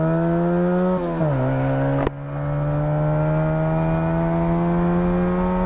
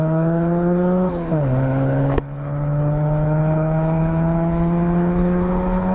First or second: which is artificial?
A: second